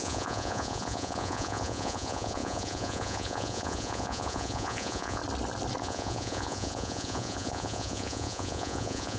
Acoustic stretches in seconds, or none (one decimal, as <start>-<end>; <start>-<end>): 5.2-5.8